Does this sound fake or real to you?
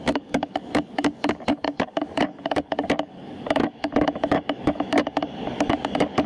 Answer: fake